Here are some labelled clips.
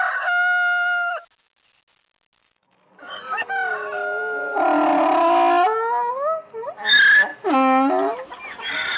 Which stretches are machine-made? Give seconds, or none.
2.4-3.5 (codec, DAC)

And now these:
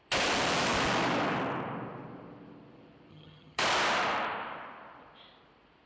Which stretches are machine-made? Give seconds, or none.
3.1-3.6 (vocoder, HiFi-GAN)

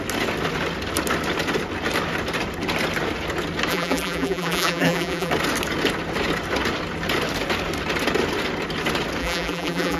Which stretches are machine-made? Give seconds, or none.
3.7-5.3 (vocoder, BigVGAN v2); 9.2-10.0

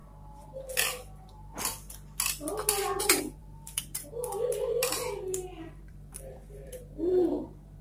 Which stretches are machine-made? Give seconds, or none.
3.0-7.8 (vocoder, BigVGAN v2)

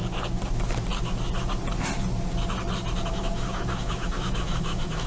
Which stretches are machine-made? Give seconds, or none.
3.1-5.1 (autoencoder, DAC-VAE)

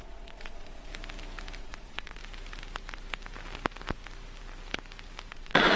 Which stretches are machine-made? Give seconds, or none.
0.0-0.9 (vocoder, Vocos); 1.6-2.2; 5.3-5.8

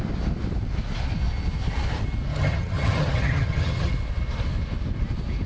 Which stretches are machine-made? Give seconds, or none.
2.3-3.9 (vocoder, HiFi-GAN)

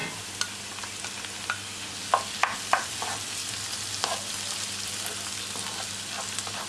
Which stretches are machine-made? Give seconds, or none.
none